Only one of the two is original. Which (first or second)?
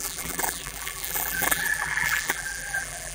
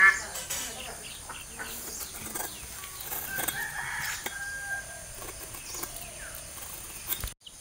second